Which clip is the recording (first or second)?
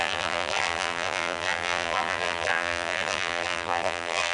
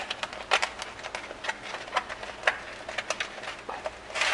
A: second